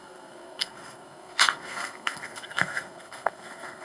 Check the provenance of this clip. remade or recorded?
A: remade